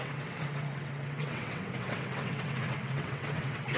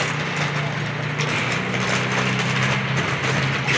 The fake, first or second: first